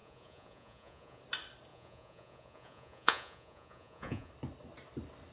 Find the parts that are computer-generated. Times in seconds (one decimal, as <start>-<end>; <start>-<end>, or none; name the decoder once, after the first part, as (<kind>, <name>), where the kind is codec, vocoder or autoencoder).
0.0-1.2 (vocoder, Vocos); 1.7-4.3